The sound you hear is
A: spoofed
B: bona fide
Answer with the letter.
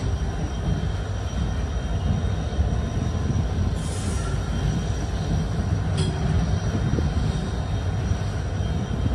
B